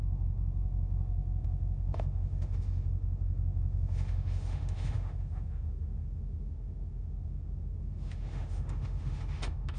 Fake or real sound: fake